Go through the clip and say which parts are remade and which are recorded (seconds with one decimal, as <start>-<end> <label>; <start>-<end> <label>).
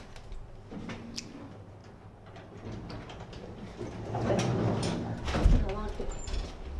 0.0-6.8 recorded